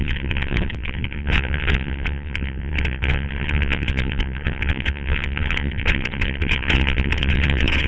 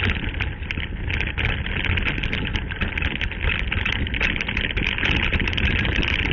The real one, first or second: second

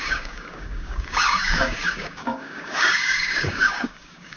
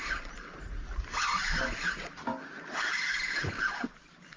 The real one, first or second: second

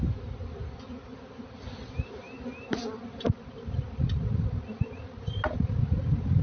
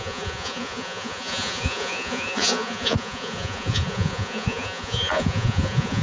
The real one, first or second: first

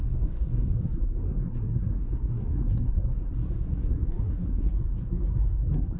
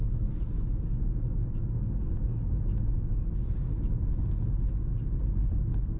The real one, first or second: second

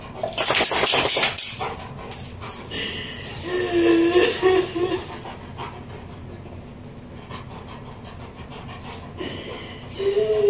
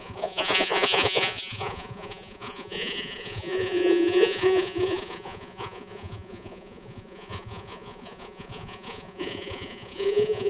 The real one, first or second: first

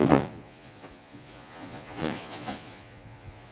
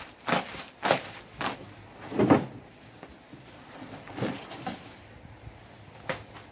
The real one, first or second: second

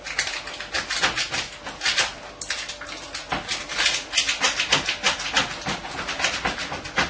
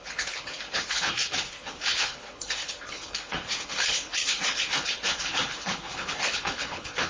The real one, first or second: first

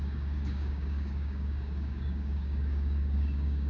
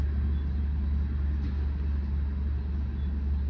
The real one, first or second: second